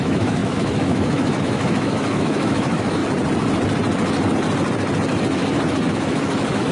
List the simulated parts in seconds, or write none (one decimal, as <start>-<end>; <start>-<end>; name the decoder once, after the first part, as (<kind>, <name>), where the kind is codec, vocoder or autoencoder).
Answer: 0.0-3.0 (autoencoder, DAC-VAE); 5.9-6.7